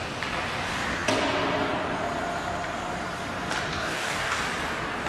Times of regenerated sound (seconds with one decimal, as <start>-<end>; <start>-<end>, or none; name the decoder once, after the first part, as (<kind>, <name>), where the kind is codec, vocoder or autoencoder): 3.7-4.4 (codec, DAC)

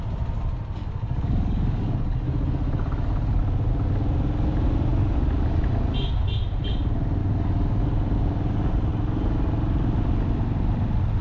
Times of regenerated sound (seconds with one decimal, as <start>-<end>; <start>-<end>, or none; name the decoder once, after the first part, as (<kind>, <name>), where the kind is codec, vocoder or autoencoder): 0.8-3.4 (codec, DAC); 7.2-7.8

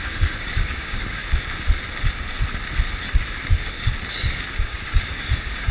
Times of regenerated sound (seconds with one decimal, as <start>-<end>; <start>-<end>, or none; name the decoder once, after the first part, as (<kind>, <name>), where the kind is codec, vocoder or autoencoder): 0.0-1.2 (codec, DAC); 4.6-5.7

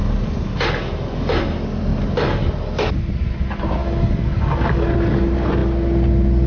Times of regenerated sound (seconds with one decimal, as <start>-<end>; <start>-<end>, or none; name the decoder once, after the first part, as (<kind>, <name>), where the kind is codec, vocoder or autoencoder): 3.8-4.9 (codec, DAC)

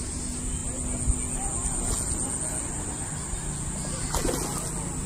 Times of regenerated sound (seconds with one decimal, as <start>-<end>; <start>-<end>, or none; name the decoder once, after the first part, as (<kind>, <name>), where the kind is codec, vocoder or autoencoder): none